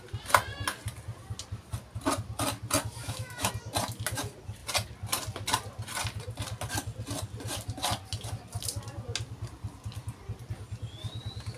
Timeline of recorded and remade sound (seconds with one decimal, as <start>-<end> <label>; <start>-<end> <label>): 0.0-3.0 recorded; 3.0-3.5 remade; 3.5-11.6 recorded